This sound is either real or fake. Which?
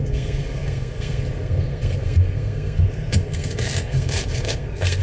fake